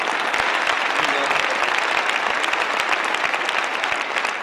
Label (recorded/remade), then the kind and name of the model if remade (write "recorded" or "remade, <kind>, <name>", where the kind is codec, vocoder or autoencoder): recorded